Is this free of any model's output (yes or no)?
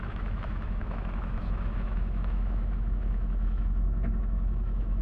no